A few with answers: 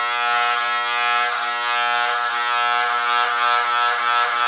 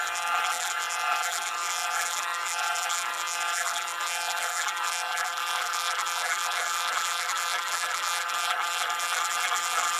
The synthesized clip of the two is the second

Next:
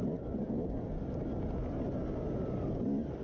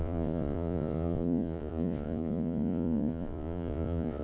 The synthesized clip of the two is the second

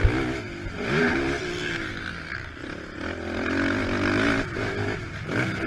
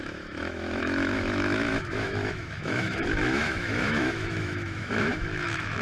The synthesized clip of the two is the second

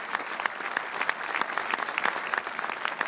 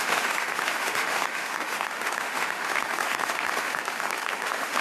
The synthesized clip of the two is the second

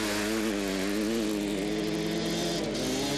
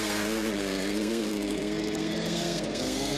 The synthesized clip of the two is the second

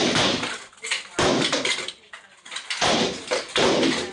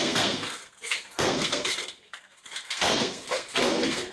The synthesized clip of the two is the second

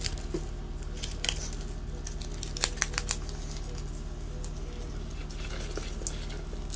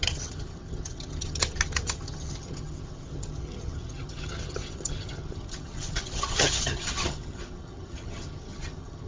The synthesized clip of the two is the second